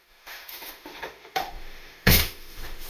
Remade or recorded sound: remade